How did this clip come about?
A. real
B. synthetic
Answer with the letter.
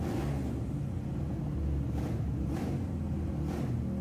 A